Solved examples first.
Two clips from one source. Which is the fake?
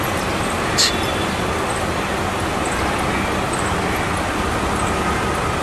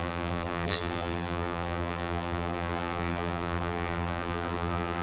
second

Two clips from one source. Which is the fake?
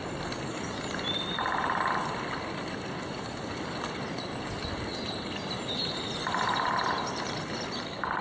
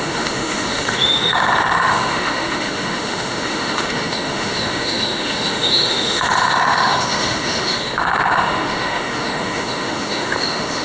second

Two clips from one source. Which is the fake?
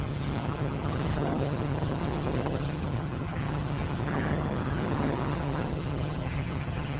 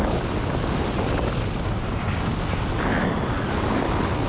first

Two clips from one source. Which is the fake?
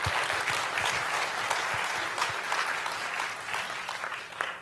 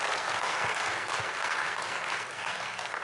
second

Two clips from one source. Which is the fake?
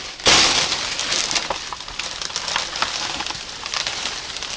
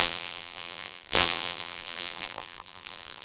second